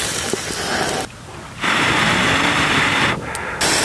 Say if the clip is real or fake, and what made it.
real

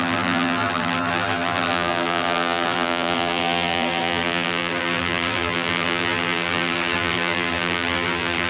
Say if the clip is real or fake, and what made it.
fake, vocoder, BigVGAN v2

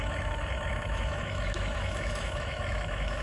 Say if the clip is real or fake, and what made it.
fake, autoencoder, DAC-VAE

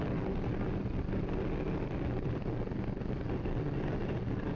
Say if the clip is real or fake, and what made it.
real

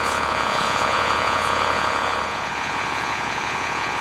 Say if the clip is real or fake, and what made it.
fake, vocoder, Vocos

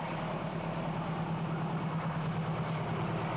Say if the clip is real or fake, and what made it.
real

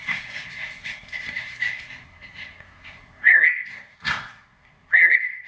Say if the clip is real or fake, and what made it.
fake, codec, SNAC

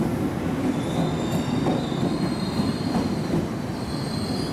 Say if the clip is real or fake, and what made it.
real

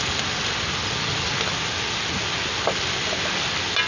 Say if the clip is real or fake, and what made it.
real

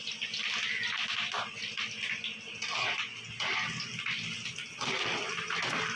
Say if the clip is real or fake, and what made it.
real